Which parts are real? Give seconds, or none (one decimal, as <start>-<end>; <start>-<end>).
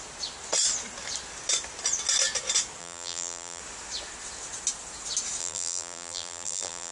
0.0-2.8; 3.6-5.4